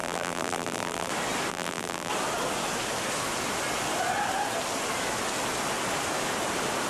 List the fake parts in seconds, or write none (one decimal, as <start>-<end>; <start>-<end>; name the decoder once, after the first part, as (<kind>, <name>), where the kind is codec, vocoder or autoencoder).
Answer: 0.0-1.1 (vocoder, BigVGAN v2); 1.5-2.1

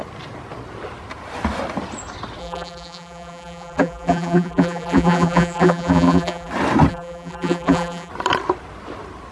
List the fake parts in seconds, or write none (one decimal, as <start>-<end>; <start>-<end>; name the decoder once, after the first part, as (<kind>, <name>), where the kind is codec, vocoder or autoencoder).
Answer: 2.4-6.5 (vocoder, BigVGAN v2); 6.9-8.1

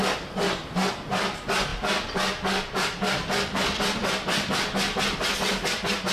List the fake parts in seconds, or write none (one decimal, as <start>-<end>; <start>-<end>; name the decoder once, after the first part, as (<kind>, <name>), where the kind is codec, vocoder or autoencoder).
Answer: none

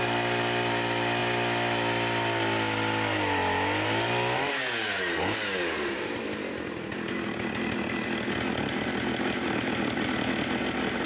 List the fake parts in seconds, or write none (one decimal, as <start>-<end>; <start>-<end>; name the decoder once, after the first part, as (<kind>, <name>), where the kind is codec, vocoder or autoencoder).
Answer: none

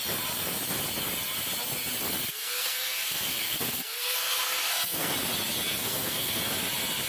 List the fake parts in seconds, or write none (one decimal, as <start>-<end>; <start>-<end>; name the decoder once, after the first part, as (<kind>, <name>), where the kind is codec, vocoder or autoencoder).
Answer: 2.3-5.1 (codec, SNAC); 5.8-6.4

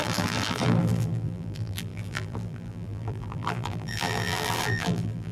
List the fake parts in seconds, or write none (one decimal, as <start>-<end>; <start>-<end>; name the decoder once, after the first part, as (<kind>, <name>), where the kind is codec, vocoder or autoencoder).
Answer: 0.0-5.3 (vocoder, BigVGAN v2)